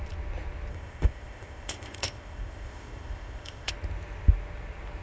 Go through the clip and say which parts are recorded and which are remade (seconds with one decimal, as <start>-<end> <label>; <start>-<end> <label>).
0.0-0.7 recorded; 0.7-3.7 remade; 3.7-5.0 recorded